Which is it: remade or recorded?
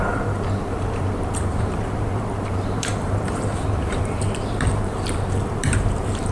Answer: remade